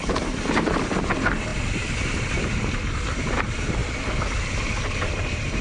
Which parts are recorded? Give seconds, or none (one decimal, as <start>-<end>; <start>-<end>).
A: 3.8-5.1